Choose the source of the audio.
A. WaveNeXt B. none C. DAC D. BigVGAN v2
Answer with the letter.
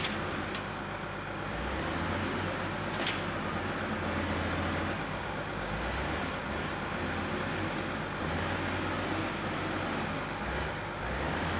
B